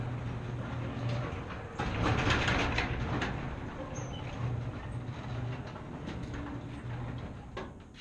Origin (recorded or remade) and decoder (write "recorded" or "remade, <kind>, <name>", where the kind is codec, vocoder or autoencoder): recorded